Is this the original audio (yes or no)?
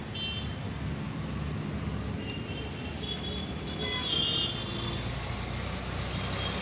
yes